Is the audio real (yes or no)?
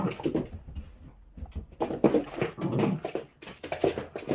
yes